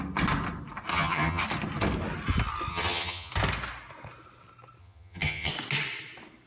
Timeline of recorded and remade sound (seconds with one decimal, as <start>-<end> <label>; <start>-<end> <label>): 0.0-0.9 recorded; 0.9-1.4 remade; 1.4-2.7 recorded; 2.7-3.3 remade; 3.3-4.8 recorded; 4.8-5.5 remade; 5.5-6.5 recorded